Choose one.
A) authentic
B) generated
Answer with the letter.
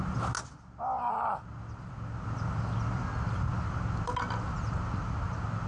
A